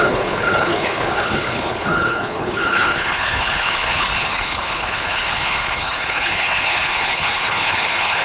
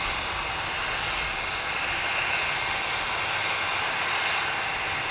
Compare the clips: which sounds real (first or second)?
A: second